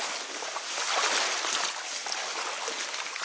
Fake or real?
real